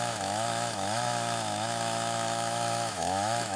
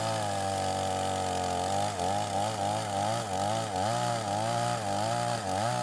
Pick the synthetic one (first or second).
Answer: first